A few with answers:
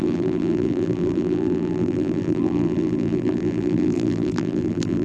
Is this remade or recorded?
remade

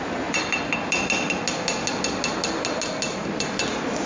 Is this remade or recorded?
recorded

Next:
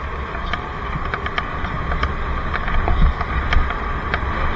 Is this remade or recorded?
recorded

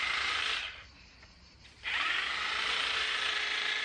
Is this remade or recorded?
remade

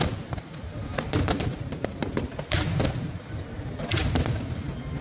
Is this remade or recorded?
remade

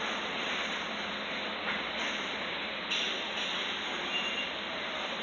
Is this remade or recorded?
recorded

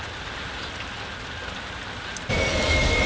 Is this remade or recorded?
remade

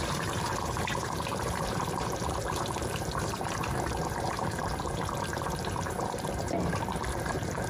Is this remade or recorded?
remade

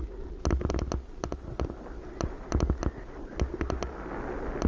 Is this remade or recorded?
recorded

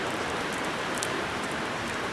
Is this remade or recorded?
remade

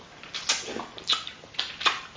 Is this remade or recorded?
recorded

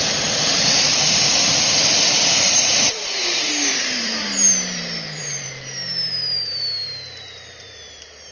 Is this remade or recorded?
remade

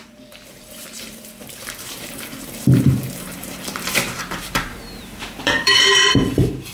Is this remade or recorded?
remade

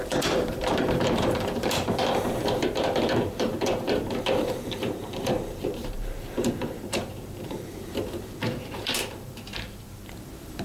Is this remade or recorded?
remade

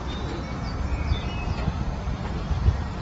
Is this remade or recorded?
recorded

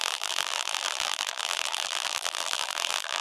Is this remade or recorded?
remade